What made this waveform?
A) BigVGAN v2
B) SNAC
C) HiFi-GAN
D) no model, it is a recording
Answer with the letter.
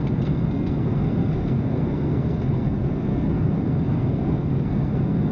B